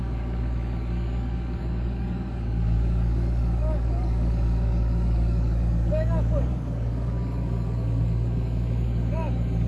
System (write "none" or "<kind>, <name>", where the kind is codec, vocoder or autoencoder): codec, DAC